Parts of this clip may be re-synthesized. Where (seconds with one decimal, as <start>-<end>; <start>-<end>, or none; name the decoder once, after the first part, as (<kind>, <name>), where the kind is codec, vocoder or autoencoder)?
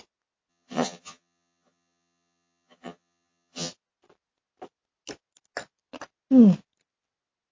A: 0.5-3.7 (vocoder, HiFi-GAN)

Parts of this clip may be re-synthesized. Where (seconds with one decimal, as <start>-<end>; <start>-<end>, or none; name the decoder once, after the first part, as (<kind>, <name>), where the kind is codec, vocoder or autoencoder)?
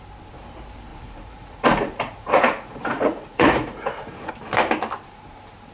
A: 0.9-4.3 (vocoder, Vocos)